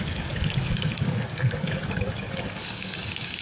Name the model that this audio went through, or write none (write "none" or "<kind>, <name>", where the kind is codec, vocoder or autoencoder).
codec, DAC